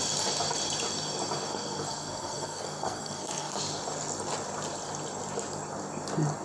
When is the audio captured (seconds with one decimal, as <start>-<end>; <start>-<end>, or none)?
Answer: 0.0-1.5; 3.6-6.4

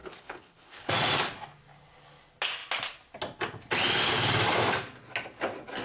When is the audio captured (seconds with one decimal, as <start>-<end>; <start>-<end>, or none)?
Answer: 0.9-5.8